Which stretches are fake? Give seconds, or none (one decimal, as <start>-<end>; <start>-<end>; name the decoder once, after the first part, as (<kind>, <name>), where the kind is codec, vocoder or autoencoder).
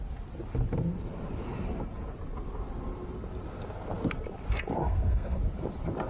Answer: 4.8-5.4 (codec, SNAC)